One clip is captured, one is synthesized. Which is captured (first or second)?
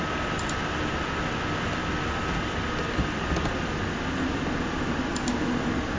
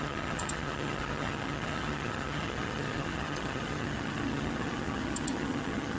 first